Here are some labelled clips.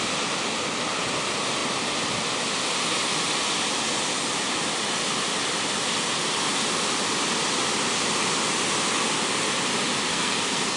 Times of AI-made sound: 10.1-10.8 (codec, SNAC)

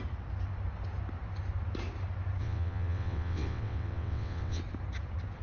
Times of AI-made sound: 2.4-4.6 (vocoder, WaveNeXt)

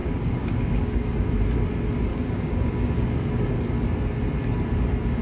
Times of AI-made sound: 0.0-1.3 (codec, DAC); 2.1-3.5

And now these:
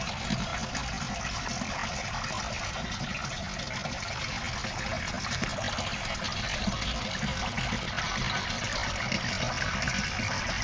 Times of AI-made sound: none